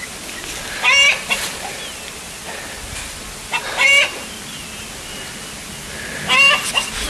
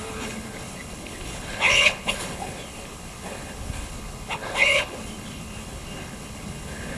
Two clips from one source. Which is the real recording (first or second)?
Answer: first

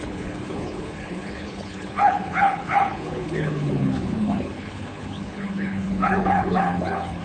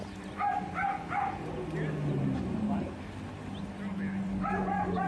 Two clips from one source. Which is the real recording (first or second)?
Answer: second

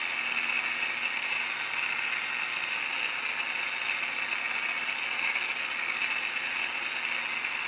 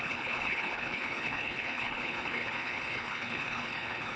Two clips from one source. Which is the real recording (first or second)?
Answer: first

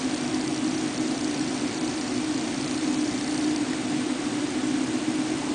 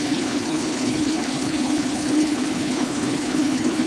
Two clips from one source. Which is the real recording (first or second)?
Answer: first